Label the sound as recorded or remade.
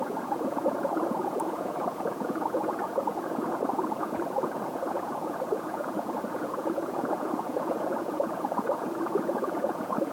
remade